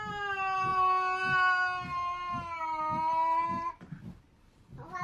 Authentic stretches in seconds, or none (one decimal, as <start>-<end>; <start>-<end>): 0.0-5.0